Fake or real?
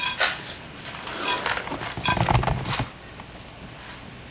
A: real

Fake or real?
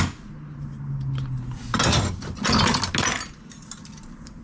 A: real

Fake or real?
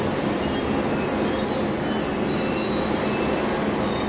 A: real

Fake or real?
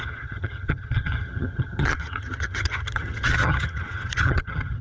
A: fake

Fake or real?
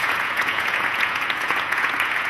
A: fake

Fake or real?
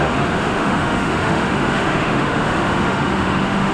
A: fake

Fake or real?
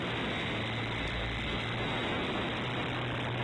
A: real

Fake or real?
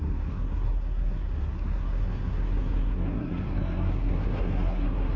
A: fake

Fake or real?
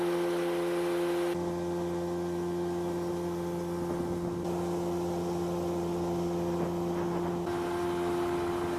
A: real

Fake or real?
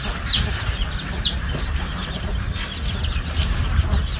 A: real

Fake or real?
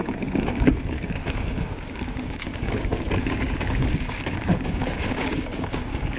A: fake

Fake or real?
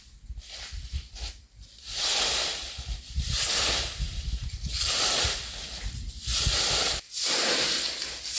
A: real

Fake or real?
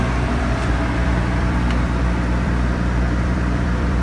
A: fake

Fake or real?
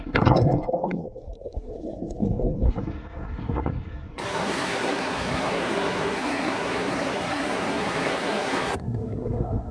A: fake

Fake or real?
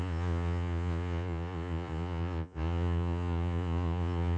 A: fake